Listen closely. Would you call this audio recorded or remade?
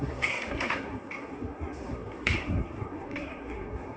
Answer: remade